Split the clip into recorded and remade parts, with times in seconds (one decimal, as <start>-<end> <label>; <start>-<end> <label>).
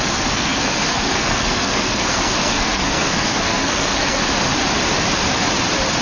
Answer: 0.0-4.2 remade; 4.2-6.0 recorded